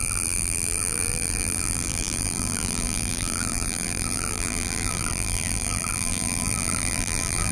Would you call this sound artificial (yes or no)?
yes